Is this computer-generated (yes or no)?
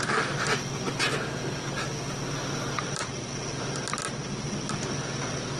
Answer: no